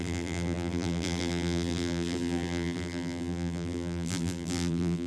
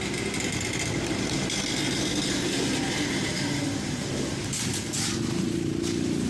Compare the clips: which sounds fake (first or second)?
first